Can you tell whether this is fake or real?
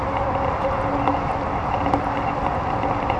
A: real